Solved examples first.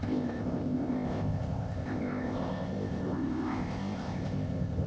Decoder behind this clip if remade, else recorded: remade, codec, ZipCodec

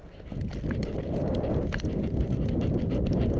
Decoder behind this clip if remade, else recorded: recorded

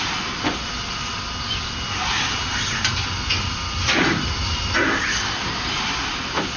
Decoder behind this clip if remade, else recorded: recorded